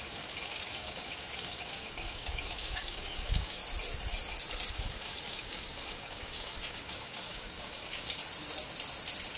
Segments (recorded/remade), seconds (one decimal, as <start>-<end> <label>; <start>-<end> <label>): 0.0-3.6 remade; 3.6-4.7 recorded; 4.7-8.2 remade; 8.2-9.4 recorded